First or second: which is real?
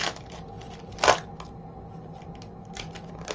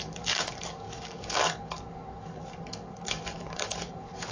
first